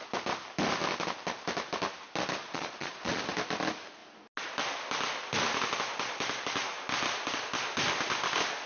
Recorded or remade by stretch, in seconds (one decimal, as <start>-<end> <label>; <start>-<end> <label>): 0.0-2.4 recorded; 2.4-3.2 remade; 3.2-8.7 recorded